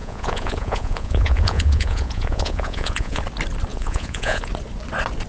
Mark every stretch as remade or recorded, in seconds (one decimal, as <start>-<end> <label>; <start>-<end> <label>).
0.0-3.2 remade; 3.2-3.7 recorded; 3.7-4.5 remade; 4.5-5.3 recorded